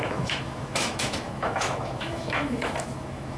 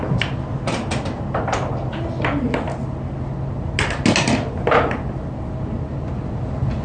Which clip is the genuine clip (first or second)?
second